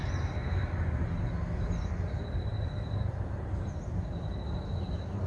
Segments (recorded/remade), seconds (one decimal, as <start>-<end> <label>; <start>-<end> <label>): 0.0-5.3 recorded